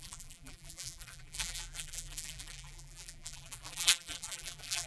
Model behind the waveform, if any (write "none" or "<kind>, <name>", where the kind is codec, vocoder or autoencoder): vocoder, BigVGAN v2